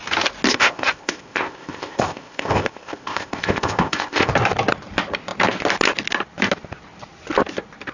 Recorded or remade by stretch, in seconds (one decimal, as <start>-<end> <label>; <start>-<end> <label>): 0.0-0.5 recorded; 0.5-4.3 remade; 4.3-7.9 recorded